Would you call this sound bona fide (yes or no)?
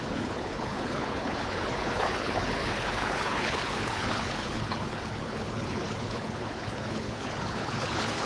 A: no